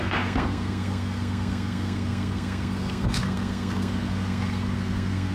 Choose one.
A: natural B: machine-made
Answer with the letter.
B